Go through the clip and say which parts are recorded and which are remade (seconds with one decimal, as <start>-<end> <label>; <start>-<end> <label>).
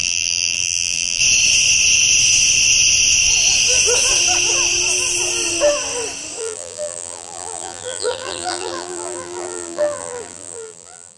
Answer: 0.0-1.2 remade; 1.2-6.4 recorded; 6.4-11.2 remade